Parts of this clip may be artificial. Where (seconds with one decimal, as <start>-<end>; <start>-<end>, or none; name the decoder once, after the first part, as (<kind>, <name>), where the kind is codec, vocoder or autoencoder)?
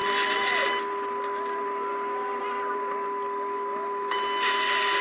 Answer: none